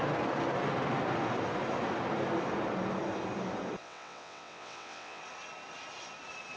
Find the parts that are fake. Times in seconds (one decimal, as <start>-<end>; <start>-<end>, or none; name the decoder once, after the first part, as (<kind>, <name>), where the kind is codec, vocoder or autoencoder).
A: 3.8-5.2 (vocoder, WaveNeXt)